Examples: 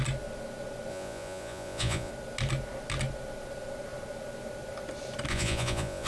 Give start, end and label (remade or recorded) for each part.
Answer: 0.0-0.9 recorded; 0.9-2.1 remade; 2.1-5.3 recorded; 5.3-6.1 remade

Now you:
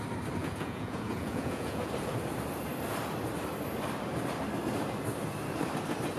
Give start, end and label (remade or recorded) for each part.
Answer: 0.0-0.4 recorded; 0.4-1.9 remade; 1.9-6.2 recorded

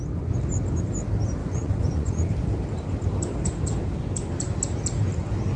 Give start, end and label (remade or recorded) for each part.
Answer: 0.0-1.4 recorded; 1.4-2.3 remade; 2.3-5.6 recorded

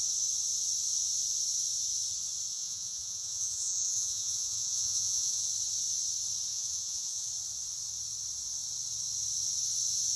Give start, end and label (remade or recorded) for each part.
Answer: 0.0-2.5 recorded; 2.5-5.4 remade; 5.4-6.5 recorded; 6.5-7.3 remade; 7.3-10.2 recorded

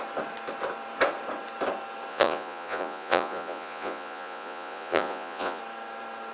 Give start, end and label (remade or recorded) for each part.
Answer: 0.0-2.1 recorded; 2.1-5.6 remade; 5.6-6.3 recorded